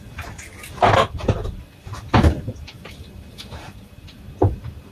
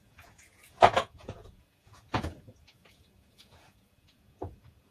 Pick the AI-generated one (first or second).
second